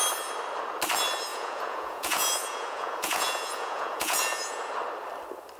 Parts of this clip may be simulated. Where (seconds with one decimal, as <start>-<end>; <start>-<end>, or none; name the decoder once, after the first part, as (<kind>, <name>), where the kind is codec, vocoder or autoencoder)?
1.3-4.7 (vocoder, Vocos)